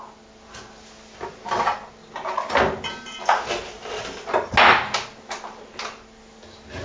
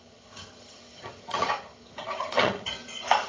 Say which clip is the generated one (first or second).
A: second